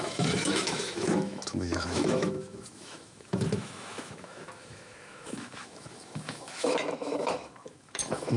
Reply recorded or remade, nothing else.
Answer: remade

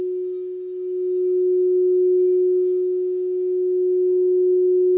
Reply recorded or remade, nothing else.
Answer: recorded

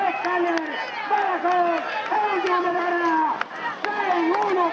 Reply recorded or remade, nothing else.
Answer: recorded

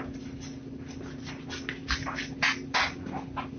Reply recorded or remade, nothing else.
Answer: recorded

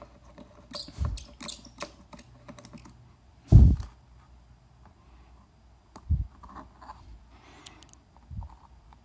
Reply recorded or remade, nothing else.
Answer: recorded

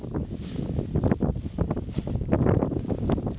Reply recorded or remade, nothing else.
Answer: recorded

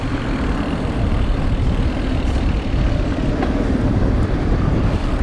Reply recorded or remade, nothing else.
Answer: remade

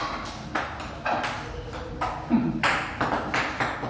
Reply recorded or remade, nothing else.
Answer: recorded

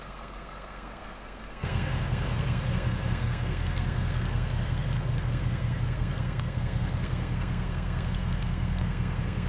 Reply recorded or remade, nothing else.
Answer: remade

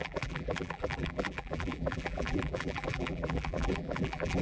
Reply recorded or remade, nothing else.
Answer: remade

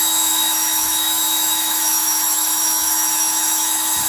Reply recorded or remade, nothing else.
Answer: remade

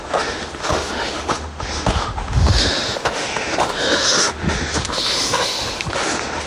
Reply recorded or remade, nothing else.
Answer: remade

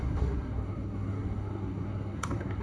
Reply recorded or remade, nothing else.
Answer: remade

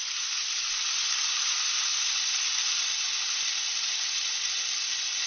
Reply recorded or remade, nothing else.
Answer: recorded